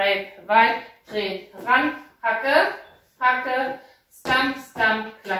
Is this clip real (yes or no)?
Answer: yes